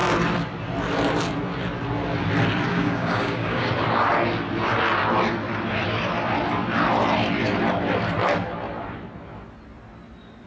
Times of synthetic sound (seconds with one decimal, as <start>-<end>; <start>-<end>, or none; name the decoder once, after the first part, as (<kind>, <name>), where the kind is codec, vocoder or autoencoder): 2.7-3.7 (codec, DAC)